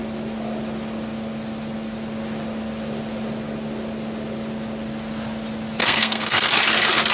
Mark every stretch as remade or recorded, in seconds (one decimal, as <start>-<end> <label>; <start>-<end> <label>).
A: 0.0-5.8 recorded; 5.8-6.5 remade; 6.5-7.1 recorded